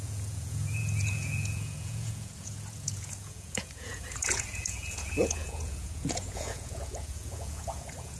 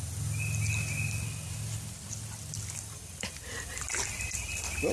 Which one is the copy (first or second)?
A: first